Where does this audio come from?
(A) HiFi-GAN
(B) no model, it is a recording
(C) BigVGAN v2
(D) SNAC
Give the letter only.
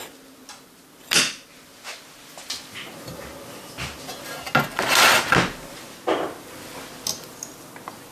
B